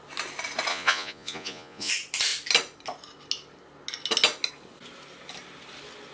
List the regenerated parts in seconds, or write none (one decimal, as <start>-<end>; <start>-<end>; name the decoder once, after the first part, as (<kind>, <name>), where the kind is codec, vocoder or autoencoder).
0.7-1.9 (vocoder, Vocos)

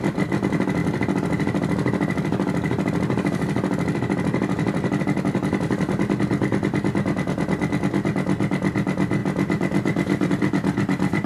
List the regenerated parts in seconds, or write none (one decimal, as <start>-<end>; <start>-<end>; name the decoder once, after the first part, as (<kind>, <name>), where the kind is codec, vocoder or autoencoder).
none

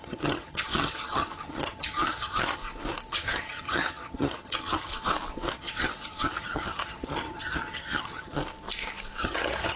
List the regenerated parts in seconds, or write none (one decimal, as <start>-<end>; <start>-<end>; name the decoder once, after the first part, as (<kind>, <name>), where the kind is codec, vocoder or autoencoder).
0.0-2.6 (vocoder, HiFi-GAN); 3.1-4.9; 5.5-8.4; 9.2-9.8

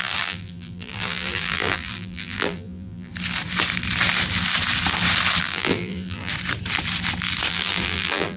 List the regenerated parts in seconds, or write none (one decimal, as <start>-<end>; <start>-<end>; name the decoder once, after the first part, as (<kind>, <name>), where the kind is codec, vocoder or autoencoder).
0.0-3.1 (vocoder, BigVGAN v2); 5.4-6.3; 7.5-8.4

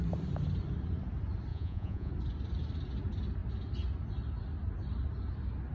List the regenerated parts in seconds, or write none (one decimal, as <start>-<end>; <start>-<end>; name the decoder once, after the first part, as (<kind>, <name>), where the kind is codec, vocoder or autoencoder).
1.5-2.1 (vocoder, Vocos)